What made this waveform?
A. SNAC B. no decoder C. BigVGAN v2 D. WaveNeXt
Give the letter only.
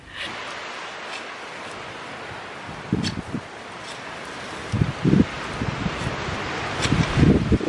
B